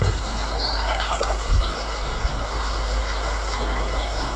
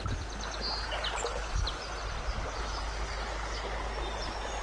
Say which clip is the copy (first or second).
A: first